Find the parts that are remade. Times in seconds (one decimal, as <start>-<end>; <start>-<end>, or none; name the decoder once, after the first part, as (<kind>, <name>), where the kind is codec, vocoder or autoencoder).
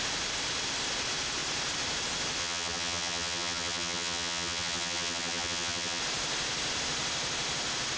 2.4-6.0 (vocoder, BigVGAN v2)